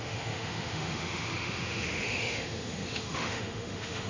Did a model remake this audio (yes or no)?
yes